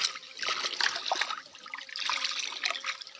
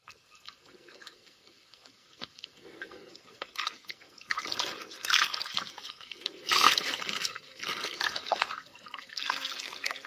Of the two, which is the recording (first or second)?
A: first